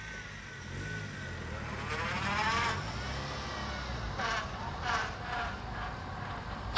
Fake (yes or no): no